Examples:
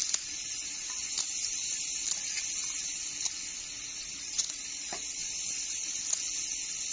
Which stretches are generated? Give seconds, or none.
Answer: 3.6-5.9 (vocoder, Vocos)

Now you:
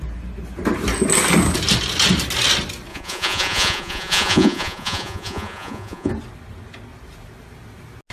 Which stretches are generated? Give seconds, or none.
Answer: 2.9-6.1 (vocoder, Vocos)

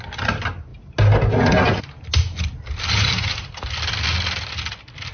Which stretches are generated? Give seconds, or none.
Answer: none

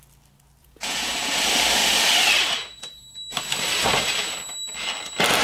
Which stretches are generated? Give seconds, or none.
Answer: 0.6-1.1 (vocoder, Vocos)